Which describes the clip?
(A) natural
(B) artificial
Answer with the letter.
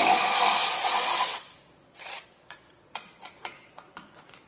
B